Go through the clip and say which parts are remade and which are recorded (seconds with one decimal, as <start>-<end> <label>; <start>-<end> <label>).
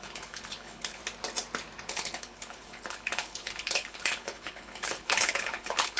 0.0-1.0 remade; 1.0-1.9 recorded; 1.9-6.0 remade